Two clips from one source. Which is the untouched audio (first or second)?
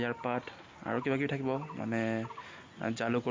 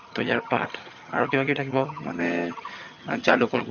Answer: first